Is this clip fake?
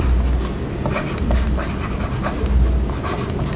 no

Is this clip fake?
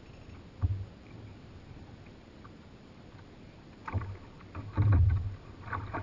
no